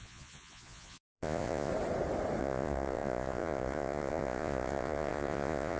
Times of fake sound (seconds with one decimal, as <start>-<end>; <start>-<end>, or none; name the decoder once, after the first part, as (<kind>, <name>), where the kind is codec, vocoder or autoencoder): 0.0-1.7 (vocoder, Vocos); 2.4-5.8